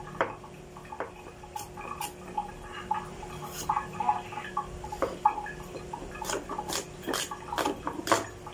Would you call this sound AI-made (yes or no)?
no